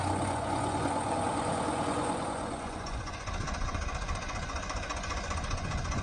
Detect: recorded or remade remade